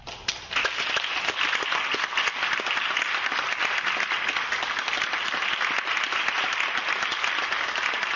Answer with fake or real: real